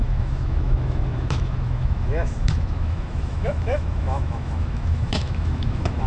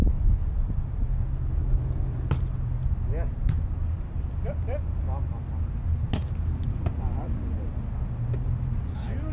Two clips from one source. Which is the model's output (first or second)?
first